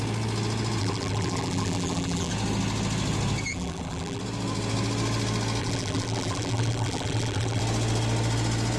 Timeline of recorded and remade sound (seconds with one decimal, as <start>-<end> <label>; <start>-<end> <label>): 0.0-0.8 recorded; 0.8-2.3 remade; 2.3-3.5 recorded; 3.5-4.2 remade; 4.2-5.6 recorded; 5.6-7.6 remade; 7.6-8.8 recorded